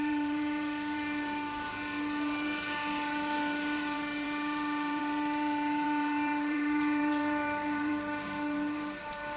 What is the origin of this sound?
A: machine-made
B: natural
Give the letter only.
A